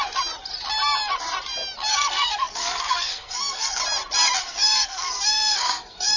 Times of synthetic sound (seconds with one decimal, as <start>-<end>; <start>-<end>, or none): 1.9-3.8; 4.4-6.2